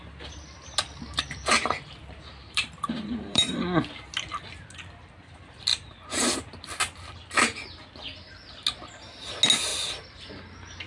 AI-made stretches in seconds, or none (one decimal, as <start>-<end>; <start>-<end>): 2.0-3.5; 5.7-6.3